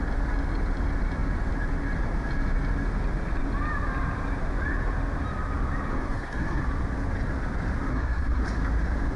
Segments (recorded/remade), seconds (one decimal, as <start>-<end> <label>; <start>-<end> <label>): 0.0-5.9 recorded; 5.9-6.6 remade; 6.6-7.9 recorded; 7.9-8.4 remade; 8.4-9.2 recorded